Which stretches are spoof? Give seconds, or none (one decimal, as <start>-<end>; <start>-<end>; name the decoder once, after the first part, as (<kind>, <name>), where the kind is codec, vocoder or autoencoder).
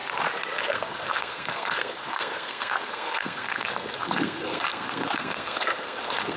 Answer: 0.6-6.4 (codec, SNAC)